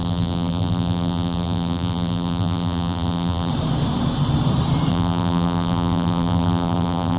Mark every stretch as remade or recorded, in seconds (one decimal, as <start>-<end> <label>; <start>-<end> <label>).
0.0-3.5 remade; 3.5-4.9 recorded; 4.9-7.2 remade